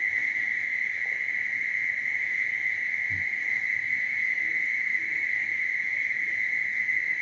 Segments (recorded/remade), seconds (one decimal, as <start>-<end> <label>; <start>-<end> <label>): 0.0-7.2 recorded